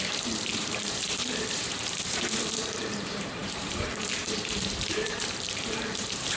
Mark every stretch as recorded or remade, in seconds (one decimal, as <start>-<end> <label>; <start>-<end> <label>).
0.0-6.4 remade